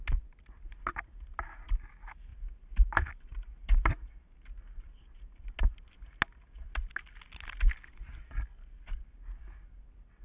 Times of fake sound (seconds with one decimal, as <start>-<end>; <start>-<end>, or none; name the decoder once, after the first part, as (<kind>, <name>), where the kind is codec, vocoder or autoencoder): none